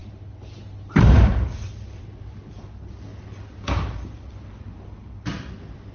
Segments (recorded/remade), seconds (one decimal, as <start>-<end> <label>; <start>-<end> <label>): 0.0-5.9 recorded